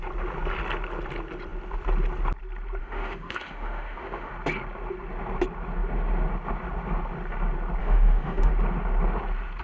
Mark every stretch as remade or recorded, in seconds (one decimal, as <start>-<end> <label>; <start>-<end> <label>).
0.0-2.8 recorded; 2.8-4.3 remade; 4.3-7.8 recorded; 7.8-8.5 remade; 8.5-9.6 recorded